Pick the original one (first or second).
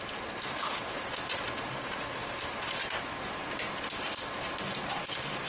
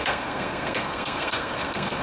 first